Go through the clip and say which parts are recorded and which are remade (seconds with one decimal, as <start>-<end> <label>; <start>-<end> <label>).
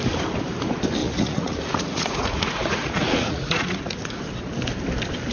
0.0-1.0 recorded; 1.0-4.2 remade; 4.2-5.3 recorded